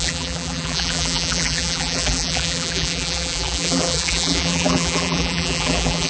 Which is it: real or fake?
fake